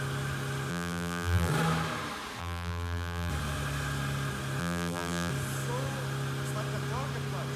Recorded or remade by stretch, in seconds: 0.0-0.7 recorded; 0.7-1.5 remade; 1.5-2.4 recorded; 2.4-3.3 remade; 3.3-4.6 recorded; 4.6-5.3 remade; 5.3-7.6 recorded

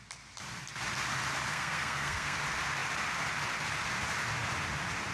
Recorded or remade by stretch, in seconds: 0.0-1.5 recorded; 1.5-2.4 remade; 2.4-5.1 recorded